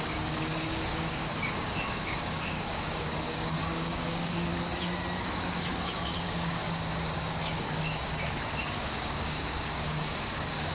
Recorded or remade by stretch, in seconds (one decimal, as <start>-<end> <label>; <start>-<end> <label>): 0.0-4.5 remade; 4.5-5.2 recorded; 5.2-8.1 remade; 8.1-8.6 recorded; 8.6-10.7 remade